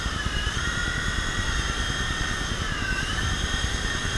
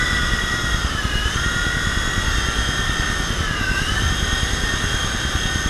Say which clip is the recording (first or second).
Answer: second